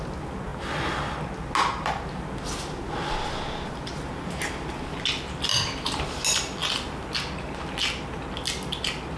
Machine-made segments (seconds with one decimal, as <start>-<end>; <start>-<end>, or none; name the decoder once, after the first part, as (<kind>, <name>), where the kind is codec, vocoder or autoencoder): 5.5-6.0 (vocoder, BigVGAN v2)